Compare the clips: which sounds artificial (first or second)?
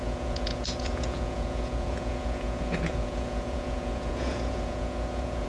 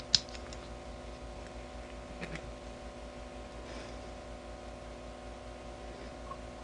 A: first